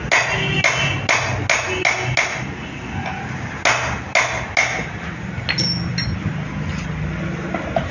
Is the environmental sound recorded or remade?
recorded